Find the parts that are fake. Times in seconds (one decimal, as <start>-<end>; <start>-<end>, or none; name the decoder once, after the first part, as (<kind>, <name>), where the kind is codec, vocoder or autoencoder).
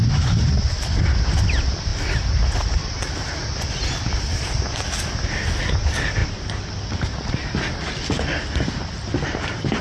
none